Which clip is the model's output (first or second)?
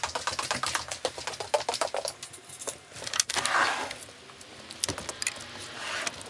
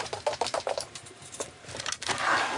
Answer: second